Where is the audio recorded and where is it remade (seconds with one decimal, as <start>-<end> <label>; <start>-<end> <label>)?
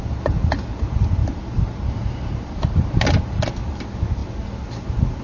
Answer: 0.0-1.2 recorded; 1.2-2.9 remade; 2.9-5.2 recorded